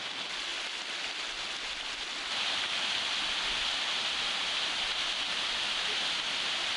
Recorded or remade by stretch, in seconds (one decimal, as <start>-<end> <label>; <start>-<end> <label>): 0.0-0.5 remade; 0.5-4.2 recorded; 4.2-6.8 remade